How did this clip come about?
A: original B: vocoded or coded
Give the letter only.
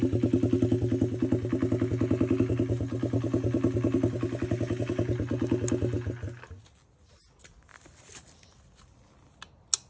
A